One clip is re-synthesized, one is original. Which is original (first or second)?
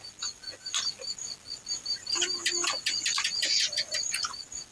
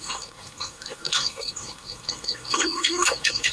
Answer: first